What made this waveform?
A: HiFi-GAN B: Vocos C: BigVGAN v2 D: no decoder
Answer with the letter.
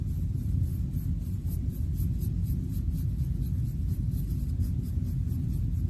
D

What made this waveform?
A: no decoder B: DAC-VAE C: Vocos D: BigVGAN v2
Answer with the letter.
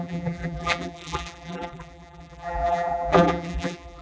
D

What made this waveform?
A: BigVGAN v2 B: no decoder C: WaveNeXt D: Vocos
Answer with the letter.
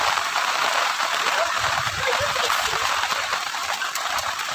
A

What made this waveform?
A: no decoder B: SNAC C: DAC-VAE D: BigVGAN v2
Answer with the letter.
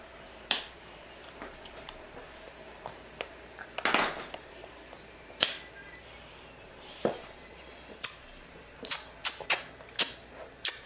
D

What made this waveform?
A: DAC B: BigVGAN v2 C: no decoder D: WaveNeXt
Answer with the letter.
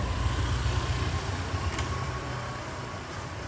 B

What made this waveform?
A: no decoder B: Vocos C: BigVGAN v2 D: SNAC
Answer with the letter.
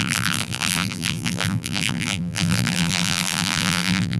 C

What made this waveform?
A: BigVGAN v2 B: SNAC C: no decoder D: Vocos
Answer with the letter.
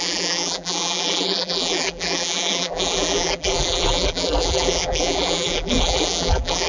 A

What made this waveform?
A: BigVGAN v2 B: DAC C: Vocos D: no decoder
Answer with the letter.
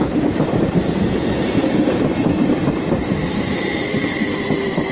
A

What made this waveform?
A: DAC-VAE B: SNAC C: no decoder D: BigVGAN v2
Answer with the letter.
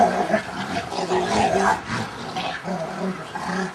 C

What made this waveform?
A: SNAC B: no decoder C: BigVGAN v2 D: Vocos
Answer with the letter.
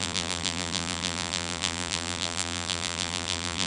C